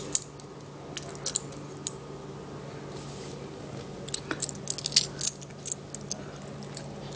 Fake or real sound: real